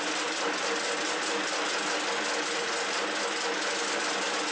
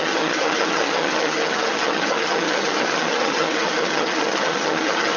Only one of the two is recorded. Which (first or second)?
first